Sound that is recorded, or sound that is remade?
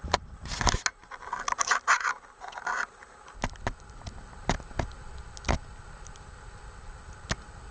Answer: recorded